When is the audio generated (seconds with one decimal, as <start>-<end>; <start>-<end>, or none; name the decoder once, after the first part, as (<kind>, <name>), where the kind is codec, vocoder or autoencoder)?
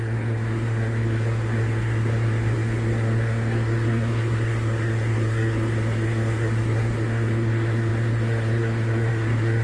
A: 0.0-9.6 (codec, SNAC)